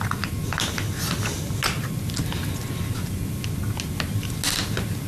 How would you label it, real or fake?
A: real